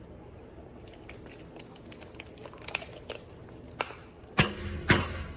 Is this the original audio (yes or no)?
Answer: yes